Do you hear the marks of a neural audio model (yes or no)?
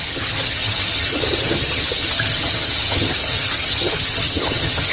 yes